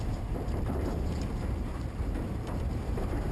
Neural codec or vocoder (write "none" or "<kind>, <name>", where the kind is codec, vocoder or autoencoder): vocoder, BigVGAN v2